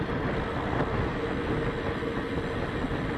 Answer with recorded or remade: recorded